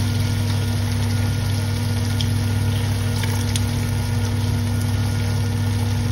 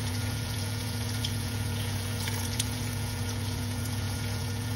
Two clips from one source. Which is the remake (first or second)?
second